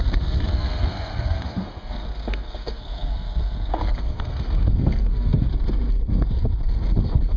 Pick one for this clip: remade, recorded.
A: remade